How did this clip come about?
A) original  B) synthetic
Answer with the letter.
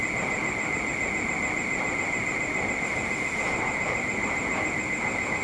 A